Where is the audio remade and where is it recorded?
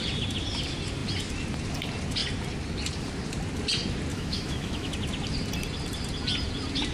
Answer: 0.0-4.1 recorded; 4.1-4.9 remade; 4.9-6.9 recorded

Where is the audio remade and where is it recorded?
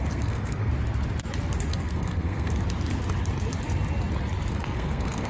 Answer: 0.0-0.7 remade; 0.7-1.7 recorded; 1.7-2.5 remade; 2.5-4.5 recorded; 4.5-5.3 remade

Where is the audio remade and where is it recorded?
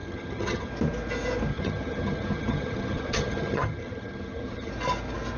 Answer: 0.0-0.7 remade; 0.7-1.5 recorded; 1.5-4.7 remade; 4.7-5.4 recorded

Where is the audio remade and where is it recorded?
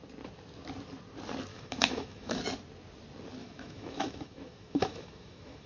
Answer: 0.0-1.5 recorded; 1.5-2.4 remade; 2.4-3.4 recorded; 3.4-5.7 remade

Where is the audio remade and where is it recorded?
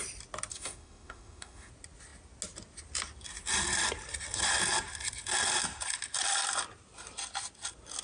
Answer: 0.0-0.5 recorded; 0.5-1.7 remade; 1.7-8.0 recorded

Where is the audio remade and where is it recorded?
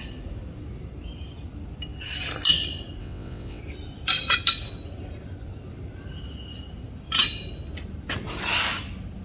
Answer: 0.0-3.0 recorded; 3.0-3.6 remade; 3.6-9.2 recorded